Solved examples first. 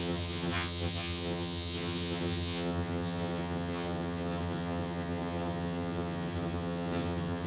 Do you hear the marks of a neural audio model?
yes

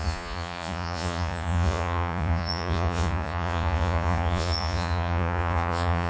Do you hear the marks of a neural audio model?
yes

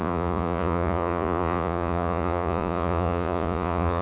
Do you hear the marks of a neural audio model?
yes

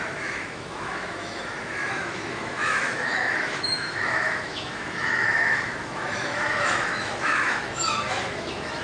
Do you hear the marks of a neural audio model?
yes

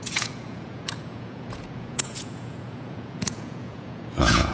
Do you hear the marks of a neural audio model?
yes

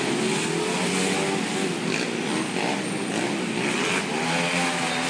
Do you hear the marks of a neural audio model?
no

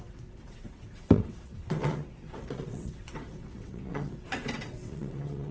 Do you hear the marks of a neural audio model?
yes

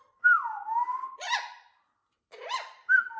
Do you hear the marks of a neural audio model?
yes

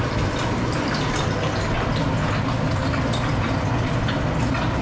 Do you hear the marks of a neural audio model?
no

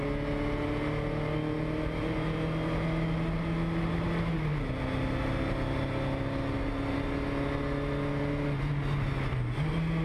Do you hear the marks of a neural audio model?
no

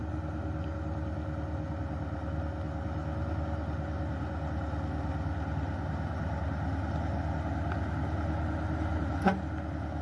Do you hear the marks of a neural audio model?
no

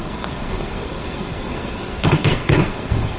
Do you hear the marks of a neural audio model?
yes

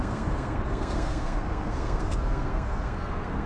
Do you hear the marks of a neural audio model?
yes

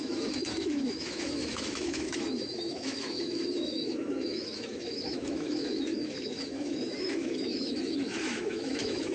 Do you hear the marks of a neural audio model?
yes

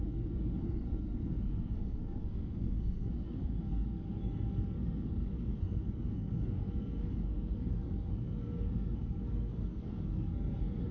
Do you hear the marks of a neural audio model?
yes